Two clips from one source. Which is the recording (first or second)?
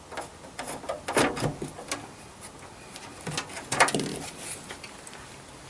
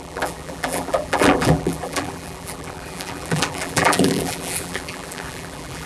first